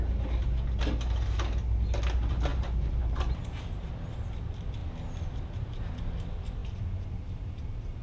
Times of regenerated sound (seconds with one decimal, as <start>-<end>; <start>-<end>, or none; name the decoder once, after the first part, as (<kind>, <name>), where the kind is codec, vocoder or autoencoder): 2.5-3.9 (vocoder, BigVGAN v2)